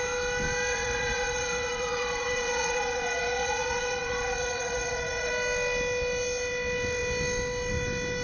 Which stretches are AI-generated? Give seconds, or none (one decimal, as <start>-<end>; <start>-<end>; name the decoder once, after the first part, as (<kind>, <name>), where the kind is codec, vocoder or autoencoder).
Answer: 0.7-5.3 (vocoder, WaveNeXt)